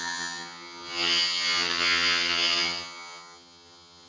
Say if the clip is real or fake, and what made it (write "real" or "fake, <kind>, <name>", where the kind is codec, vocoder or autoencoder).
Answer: fake, vocoder, HiFi-GAN